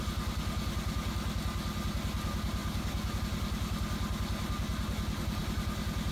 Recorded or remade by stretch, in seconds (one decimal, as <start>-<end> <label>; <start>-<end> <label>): 0.0-6.1 recorded